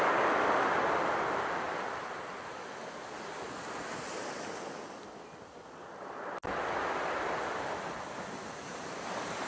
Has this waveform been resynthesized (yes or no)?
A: no